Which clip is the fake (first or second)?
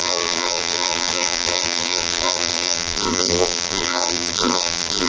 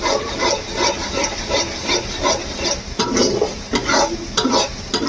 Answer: first